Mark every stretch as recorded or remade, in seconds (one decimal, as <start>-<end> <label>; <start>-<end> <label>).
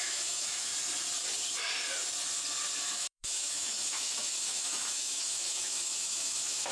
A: 0.0-0.7 remade; 0.7-2.8 recorded; 2.8-6.7 remade